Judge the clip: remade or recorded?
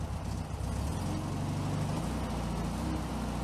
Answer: recorded